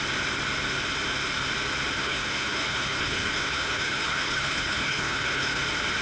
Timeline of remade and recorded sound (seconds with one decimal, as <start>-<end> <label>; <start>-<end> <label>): 0.0-2.0 recorded; 2.0-5.6 remade; 5.6-6.0 recorded